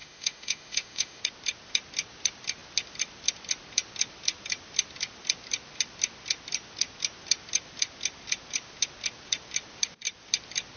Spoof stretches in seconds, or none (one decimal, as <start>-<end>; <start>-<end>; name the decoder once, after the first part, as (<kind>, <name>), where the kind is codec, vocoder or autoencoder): 0.0-1.2 (autoencoder, DAC-VAE)